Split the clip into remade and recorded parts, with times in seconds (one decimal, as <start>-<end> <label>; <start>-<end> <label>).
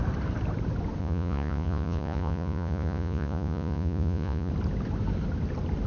0.0-1.0 recorded; 1.0-4.5 remade; 4.5-5.9 recorded